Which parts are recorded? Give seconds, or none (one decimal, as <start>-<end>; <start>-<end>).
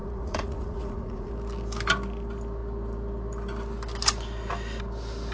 1.3-5.3